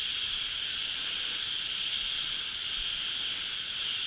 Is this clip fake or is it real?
real